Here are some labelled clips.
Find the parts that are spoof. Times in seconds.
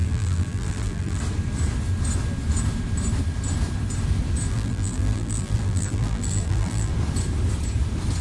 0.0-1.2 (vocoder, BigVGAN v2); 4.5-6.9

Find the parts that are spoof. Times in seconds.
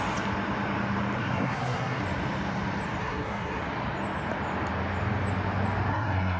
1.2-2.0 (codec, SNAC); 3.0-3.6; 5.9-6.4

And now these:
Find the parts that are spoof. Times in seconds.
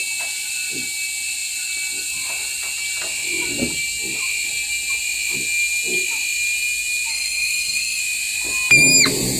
7.1-8.0 (codec, SNAC)